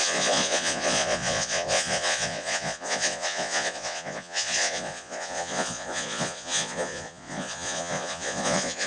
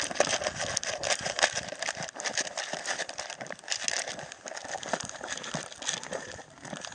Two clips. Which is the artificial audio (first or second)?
first